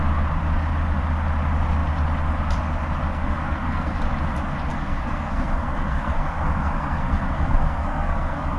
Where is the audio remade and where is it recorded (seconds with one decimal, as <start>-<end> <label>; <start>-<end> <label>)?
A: 0.0-3.1 recorded; 3.1-4.0 remade; 4.0-4.7 recorded; 4.7-8.6 remade